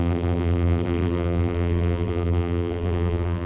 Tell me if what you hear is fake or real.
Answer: fake